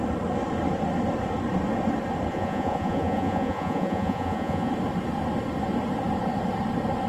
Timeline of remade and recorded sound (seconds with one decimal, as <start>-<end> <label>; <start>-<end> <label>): 0.0-2.3 recorded; 2.3-4.7 remade; 4.7-7.1 recorded